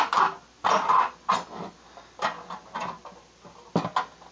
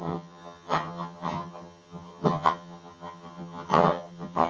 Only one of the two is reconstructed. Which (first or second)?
second